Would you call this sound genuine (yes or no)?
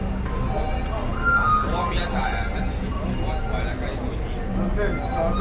yes